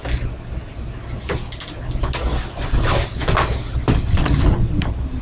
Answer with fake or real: real